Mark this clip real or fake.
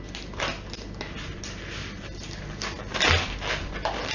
real